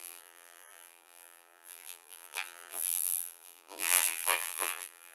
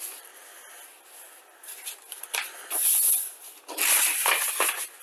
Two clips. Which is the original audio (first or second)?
second